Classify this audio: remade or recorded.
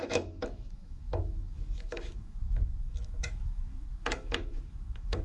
remade